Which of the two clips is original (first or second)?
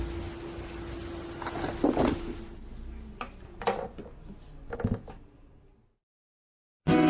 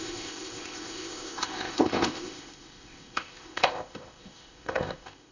first